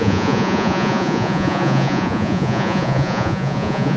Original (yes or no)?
no